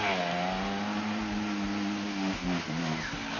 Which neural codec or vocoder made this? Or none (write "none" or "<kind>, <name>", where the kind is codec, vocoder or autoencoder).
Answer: none